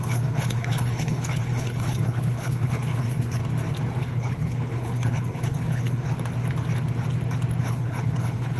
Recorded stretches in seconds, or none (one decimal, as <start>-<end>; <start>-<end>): 3.4-4.0; 6.1-7.6